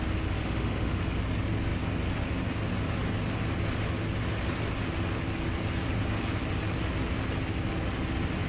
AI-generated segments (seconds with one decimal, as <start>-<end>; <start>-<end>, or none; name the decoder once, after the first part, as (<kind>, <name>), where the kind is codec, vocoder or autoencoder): 0.4-1.0 (autoencoder, DAC-VAE)